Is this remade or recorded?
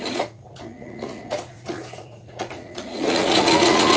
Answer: remade